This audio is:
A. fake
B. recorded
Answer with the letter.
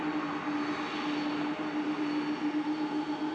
B